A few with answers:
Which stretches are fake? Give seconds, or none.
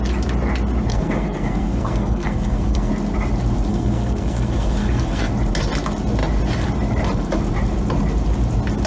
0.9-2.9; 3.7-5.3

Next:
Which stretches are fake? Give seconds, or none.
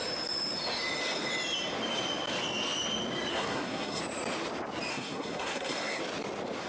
3.3-4.0; 4.9-6.0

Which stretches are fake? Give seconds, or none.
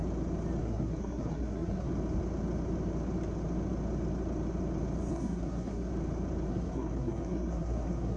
0.6-1.9; 5.1-5.9; 6.5-8.2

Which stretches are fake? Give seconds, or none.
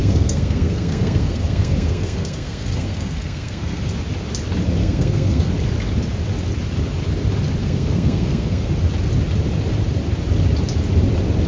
0.0-3.8; 4.8-5.5; 7.6-8.7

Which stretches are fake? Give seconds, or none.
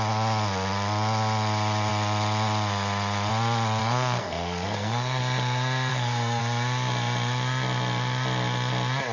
3.8-5.2; 5.9-6.4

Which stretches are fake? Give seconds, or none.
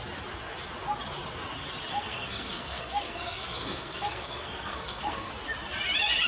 1.9-5.3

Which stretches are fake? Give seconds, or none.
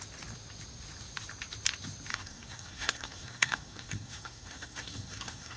2.1-5.6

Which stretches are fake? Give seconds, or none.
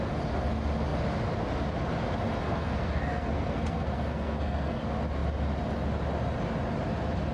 2.4-4.8